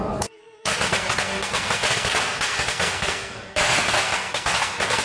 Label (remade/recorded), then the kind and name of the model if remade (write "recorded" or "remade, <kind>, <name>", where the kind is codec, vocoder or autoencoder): remade, codec, SNAC